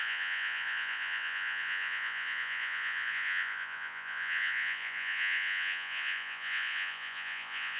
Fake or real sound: fake